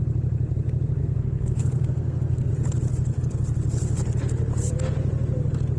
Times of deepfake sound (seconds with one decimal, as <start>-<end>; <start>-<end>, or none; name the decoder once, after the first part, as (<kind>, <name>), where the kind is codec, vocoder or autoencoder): 1.0-2.5 (codec, SNAC)